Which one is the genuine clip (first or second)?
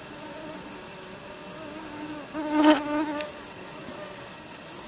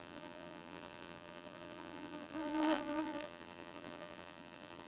first